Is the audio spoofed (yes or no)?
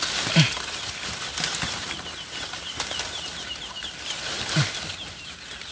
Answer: no